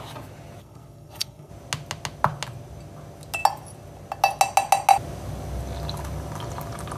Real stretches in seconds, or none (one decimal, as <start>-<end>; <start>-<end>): 0.0-0.6; 1.5-7.0